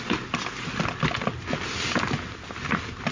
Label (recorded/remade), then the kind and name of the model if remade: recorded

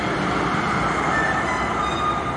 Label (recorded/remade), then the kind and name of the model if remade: recorded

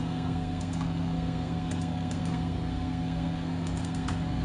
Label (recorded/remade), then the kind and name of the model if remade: remade, codec, SNAC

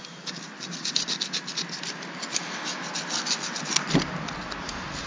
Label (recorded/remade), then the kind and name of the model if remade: recorded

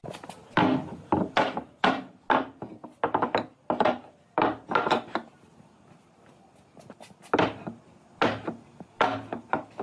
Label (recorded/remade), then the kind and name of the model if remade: recorded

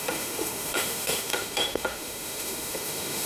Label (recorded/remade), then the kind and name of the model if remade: remade, autoencoder, DAC-VAE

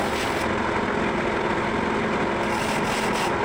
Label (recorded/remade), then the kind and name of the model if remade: recorded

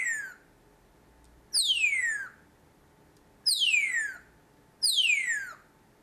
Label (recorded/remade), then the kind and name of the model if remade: recorded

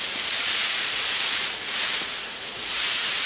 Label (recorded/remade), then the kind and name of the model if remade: remade, vocoder, Vocos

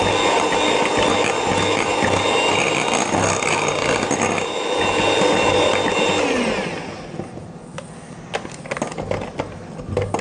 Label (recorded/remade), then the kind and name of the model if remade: recorded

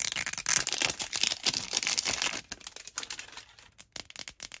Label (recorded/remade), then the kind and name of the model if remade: recorded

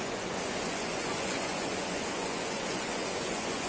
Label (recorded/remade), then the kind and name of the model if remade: remade, vocoder, Vocos